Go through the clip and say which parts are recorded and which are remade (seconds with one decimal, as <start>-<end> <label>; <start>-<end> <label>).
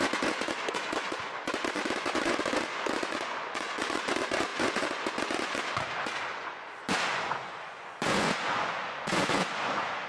0.0-10.1 remade